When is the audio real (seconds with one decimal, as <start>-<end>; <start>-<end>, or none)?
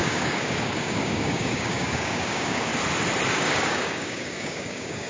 2.7-3.3